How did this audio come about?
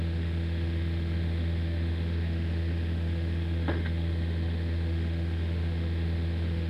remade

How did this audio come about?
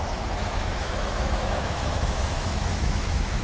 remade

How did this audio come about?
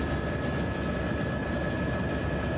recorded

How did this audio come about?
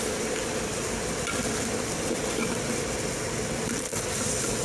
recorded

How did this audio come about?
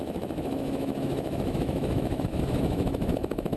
remade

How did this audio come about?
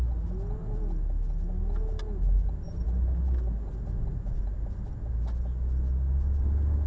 recorded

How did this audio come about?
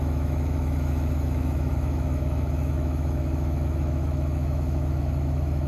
remade